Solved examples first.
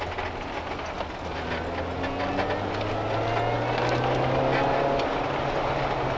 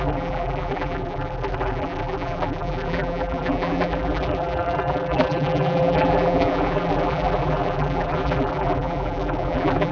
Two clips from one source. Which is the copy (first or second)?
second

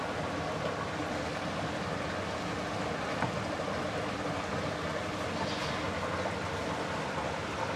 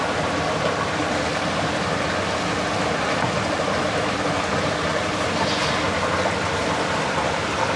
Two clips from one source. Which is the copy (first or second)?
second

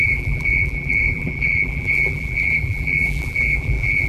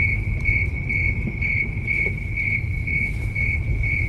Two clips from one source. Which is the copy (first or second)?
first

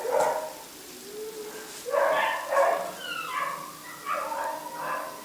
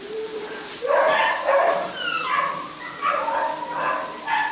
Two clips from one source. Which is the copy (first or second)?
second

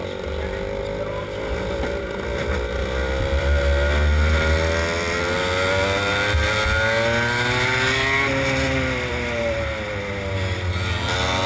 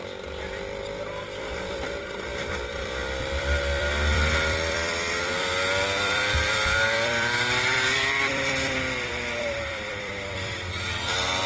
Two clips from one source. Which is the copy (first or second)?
second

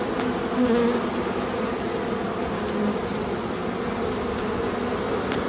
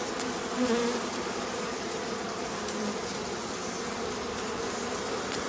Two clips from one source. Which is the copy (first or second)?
second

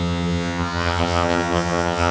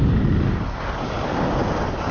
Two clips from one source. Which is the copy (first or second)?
first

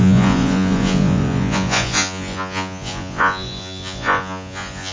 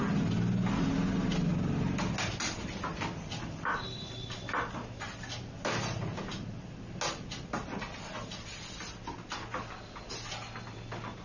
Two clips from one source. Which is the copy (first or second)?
first